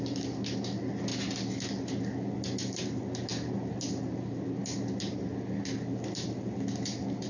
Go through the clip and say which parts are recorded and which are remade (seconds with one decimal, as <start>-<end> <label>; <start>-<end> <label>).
0.0-7.3 recorded